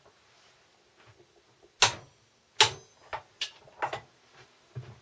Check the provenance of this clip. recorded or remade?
recorded